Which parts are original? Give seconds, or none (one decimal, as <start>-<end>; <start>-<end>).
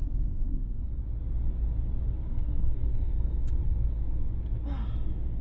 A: 0.0-0.5; 1.0-2.2; 4.0-5.4